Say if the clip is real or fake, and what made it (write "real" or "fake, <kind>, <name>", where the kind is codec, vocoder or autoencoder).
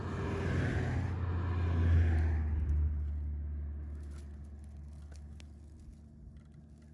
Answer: real